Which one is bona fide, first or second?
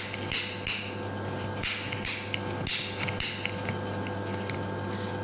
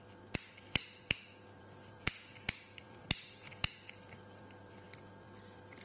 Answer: first